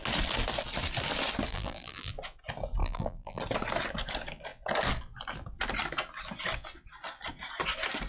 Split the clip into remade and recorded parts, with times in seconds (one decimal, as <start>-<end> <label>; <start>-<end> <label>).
0.0-1.5 recorded; 1.5-2.1 remade; 2.1-2.8 recorded; 2.8-3.4 remade; 3.4-8.1 recorded